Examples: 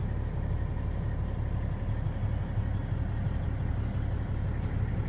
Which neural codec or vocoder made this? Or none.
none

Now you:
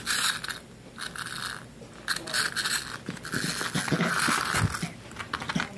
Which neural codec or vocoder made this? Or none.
none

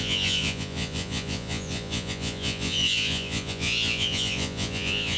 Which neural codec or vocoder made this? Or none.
vocoder, Vocos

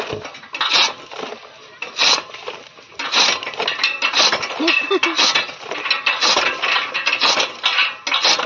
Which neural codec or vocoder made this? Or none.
none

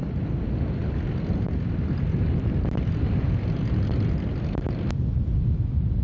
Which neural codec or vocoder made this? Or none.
none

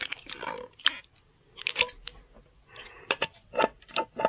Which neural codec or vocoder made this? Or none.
none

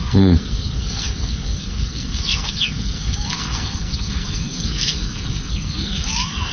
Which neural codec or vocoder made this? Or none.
codec, SNAC